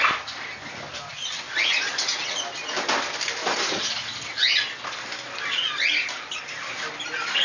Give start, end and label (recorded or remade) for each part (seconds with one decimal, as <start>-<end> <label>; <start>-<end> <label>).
0.0-7.4 recorded